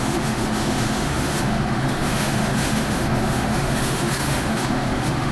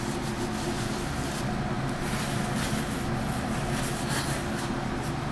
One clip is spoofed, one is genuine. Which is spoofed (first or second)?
first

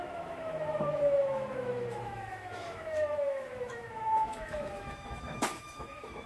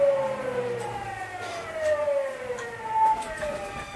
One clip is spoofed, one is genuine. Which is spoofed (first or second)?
first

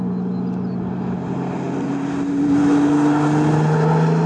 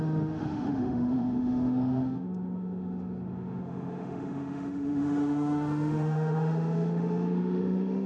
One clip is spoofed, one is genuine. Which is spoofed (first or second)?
second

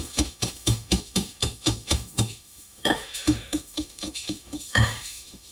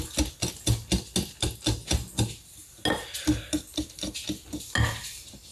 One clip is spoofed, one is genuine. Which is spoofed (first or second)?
first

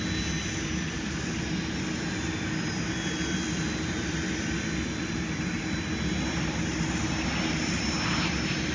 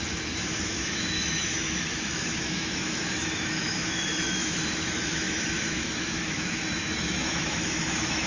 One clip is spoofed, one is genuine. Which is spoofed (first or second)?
second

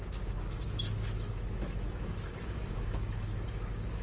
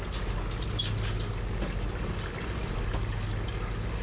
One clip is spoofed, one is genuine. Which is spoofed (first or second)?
first